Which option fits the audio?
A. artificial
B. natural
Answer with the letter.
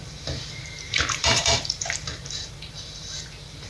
A